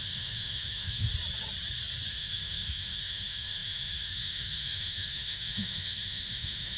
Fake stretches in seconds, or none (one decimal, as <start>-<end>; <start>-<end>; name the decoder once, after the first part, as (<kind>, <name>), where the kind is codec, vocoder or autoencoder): 0.0-1.1 (autoencoder, DAC-VAE); 2.1-6.8